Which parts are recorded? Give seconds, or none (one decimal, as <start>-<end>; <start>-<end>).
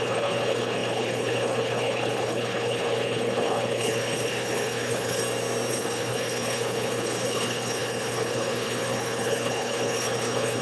5.2-5.7